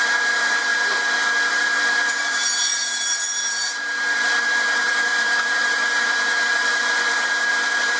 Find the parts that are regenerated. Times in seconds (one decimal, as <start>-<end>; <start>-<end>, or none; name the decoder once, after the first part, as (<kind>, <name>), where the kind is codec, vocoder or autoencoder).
0.0-0.7 (vocoder, BigVGAN v2); 1.5-8.0